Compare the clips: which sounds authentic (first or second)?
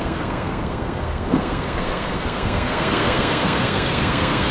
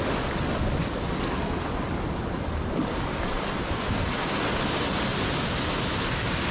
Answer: second